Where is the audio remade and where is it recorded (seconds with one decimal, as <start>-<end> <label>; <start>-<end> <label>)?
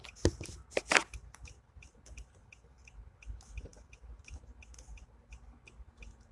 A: 0.0-3.7 recorded; 3.7-4.4 remade; 4.4-6.3 recorded